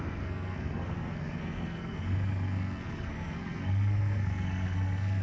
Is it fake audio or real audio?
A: fake